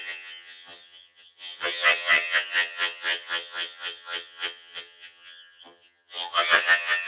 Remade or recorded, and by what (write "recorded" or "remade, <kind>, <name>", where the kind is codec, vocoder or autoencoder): remade, vocoder, HiFi-GAN